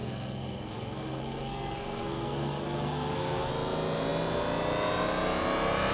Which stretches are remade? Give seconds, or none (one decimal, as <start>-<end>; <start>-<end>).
0.0-3.5